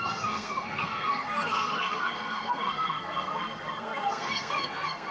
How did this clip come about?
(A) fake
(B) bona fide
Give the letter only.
A